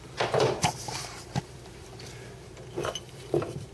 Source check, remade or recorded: remade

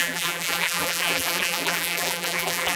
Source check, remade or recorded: remade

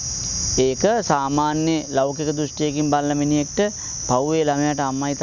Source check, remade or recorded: recorded